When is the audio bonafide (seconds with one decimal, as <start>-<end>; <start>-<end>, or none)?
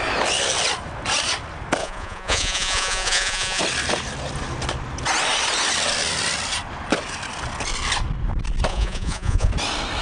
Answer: 0.0-1.8; 3.6-8.7; 9.5-10.0